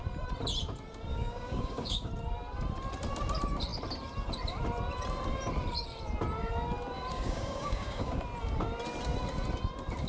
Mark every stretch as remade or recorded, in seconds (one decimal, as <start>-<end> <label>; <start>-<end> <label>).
0.0-1.1 recorded; 1.1-2.1 remade; 2.1-7.1 recorded; 7.1-8.2 remade; 8.2-10.1 recorded